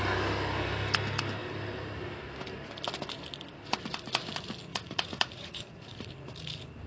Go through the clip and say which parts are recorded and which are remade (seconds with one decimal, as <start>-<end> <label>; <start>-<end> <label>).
0.0-4.7 recorded; 4.7-6.1 remade; 6.1-6.9 recorded